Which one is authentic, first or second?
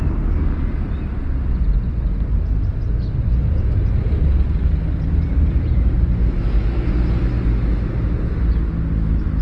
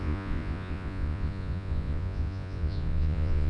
first